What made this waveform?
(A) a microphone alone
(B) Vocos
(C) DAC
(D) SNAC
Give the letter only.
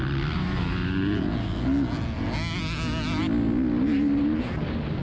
A